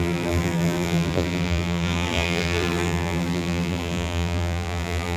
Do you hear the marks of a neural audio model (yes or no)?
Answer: yes